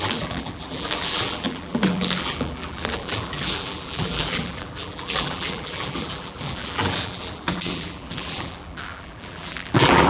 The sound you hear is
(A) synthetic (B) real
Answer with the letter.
A